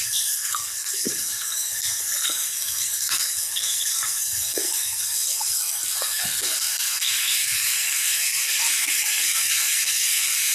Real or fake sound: fake